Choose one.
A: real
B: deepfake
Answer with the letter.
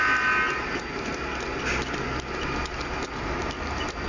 A